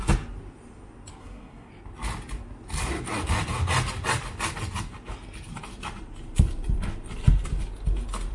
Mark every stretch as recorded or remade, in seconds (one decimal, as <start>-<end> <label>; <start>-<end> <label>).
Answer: 0.0-1.2 recorded; 1.2-1.7 remade; 1.7-8.3 recorded